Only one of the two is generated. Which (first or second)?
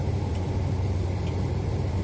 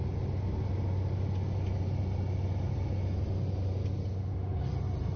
first